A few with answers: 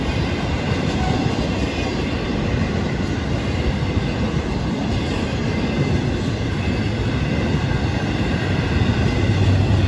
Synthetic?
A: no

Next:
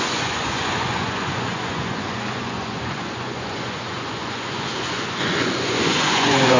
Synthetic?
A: yes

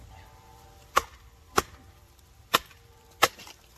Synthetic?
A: yes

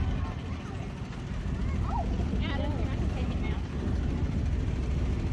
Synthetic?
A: no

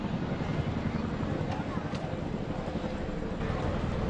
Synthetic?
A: no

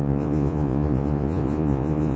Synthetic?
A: yes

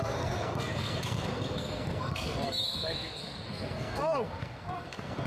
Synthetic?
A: yes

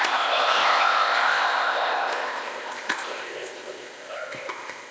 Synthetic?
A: yes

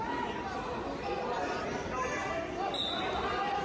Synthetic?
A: no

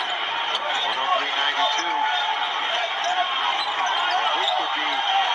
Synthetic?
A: no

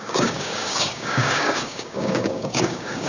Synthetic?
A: yes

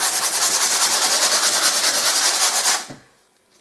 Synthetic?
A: no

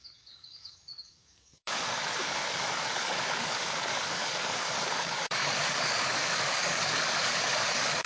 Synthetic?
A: yes